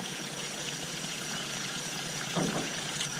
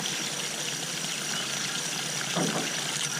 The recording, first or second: second